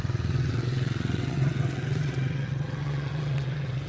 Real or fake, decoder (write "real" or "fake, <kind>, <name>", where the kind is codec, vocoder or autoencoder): fake, vocoder, WaveNeXt